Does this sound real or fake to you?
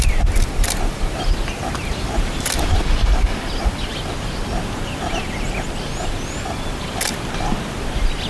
real